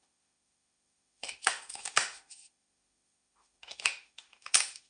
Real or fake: fake